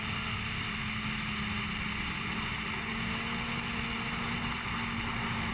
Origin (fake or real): real